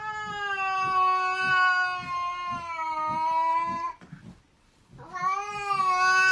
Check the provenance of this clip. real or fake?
real